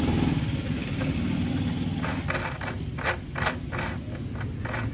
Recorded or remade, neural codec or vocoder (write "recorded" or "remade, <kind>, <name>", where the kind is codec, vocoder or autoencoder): recorded